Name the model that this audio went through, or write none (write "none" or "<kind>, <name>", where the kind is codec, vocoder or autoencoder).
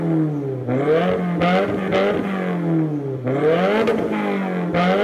none